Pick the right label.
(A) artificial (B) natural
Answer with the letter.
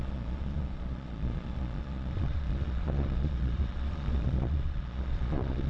A